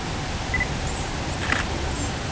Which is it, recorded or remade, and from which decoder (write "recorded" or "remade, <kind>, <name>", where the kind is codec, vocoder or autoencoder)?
recorded